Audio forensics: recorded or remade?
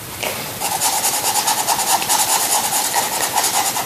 recorded